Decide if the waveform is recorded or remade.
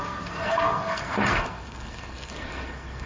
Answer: remade